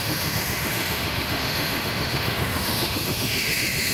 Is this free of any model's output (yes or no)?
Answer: no